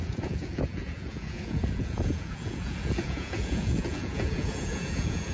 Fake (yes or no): yes